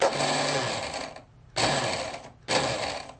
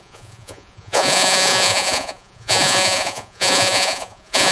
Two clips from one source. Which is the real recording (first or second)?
first